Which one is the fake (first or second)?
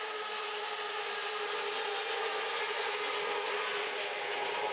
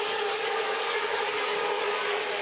second